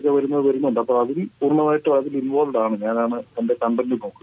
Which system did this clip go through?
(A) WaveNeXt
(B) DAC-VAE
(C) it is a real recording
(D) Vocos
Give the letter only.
C